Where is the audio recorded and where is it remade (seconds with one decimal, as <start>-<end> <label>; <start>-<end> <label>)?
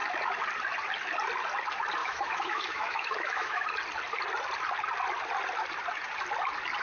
0.0-2.0 recorded; 2.0-3.7 remade; 3.7-6.8 recorded